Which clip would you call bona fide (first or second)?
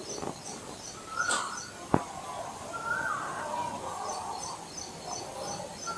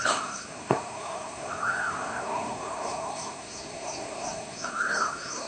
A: first